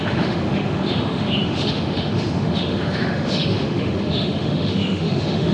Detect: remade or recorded remade